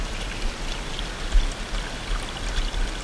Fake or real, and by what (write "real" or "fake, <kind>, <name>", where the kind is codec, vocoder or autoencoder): real